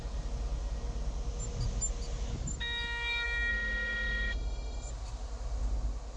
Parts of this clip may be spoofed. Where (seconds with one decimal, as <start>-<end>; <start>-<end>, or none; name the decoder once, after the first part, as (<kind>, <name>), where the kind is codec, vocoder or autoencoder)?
3.5-4.9 (autoencoder, DAC-VAE)